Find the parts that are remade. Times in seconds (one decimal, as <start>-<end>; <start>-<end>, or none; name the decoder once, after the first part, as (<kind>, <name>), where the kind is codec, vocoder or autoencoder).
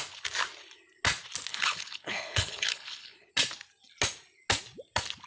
1.5-3.3 (codec, HILCodec)